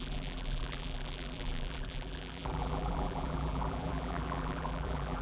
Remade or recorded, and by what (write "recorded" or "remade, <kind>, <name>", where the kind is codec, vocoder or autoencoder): remade, vocoder, BigVGAN v2